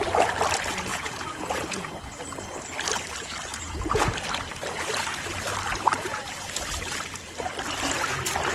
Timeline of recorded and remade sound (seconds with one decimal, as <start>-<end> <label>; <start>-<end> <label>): 0.0-0.9 recorded; 0.9-1.9 remade; 1.9-3.5 recorded; 3.5-4.1 remade; 4.1-8.5 recorded